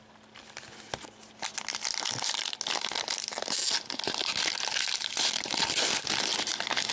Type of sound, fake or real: real